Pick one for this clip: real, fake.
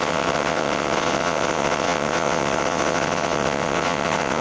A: fake